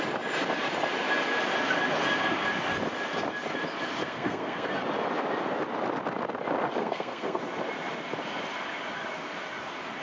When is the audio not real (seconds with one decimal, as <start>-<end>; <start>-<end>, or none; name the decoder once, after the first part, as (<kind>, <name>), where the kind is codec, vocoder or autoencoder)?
4.0-4.7 (codec, SNAC); 6.8-7.4